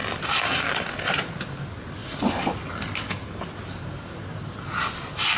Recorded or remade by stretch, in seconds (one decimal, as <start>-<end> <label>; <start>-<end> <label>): 0.0-5.4 recorded